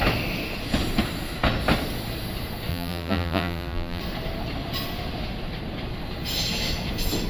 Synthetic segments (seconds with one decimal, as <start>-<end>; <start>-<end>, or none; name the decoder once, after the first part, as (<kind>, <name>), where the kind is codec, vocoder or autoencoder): 2.7-4.0 (vocoder, BigVGAN v2)